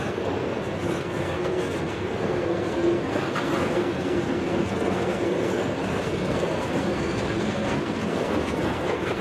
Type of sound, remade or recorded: remade